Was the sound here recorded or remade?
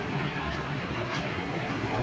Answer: remade